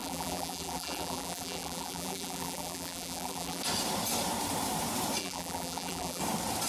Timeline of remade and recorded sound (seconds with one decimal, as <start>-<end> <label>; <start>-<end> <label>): 0.0-3.6 remade; 3.6-5.2 recorded; 5.2-6.2 remade; 6.2-6.7 recorded